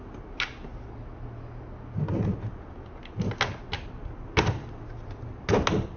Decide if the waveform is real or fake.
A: real